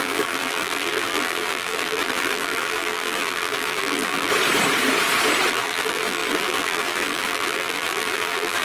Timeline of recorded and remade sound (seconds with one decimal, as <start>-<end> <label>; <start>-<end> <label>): 0.0-4.3 remade; 4.3-5.5 recorded; 5.5-8.6 remade